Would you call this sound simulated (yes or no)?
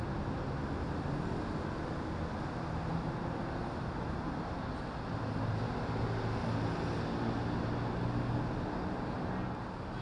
no